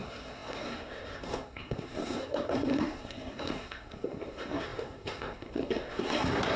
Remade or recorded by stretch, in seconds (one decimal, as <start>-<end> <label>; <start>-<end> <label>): 0.0-6.6 remade